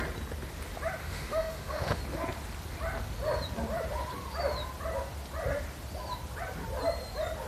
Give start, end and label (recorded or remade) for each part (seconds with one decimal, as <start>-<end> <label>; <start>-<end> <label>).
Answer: 0.0-1.0 recorded; 1.0-2.0 remade; 2.0-7.5 recorded